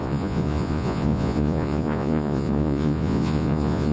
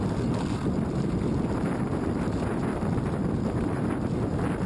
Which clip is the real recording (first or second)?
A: second